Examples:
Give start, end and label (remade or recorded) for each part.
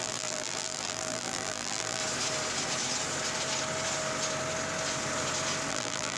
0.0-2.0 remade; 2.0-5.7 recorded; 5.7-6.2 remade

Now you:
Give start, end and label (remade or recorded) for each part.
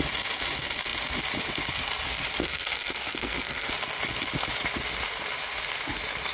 0.0-2.4 recorded; 2.4-3.7 remade; 3.7-6.3 recorded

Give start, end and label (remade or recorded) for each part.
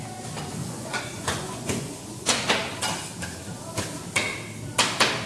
0.0-0.6 recorded; 0.6-2.5 remade; 2.5-5.3 recorded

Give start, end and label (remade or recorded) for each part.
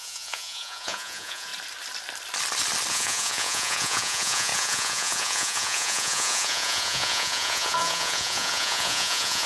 0.0-1.5 remade; 1.5-2.9 recorded; 2.9-9.5 remade